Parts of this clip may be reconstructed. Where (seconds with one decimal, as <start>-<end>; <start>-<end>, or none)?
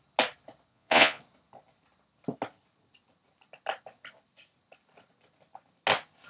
0.7-1.2